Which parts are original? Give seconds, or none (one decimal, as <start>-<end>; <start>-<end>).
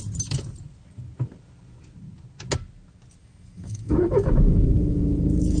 0.0-3.2